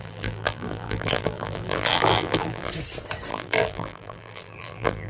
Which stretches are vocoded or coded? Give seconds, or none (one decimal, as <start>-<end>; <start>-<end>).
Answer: 0.0-2.7; 3.3-5.1